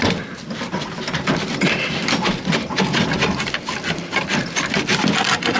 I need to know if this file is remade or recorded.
recorded